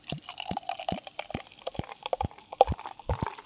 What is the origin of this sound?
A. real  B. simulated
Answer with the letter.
A